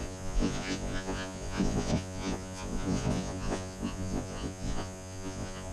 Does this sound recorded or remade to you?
remade